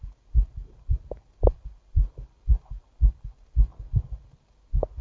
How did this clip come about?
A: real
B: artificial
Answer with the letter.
A